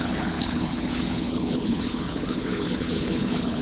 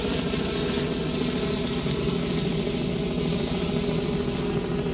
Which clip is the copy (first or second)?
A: first